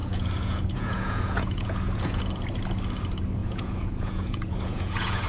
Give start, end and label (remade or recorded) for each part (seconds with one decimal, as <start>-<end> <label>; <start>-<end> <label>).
0.0-2.2 remade; 2.2-3.4 recorded; 3.4-5.3 remade